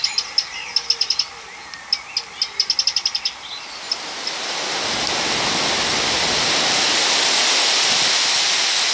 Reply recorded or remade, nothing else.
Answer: recorded